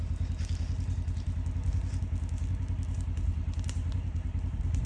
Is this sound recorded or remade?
recorded